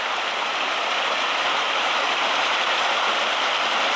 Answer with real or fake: real